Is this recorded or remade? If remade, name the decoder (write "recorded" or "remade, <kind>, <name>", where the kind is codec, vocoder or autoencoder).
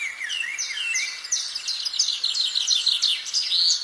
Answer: recorded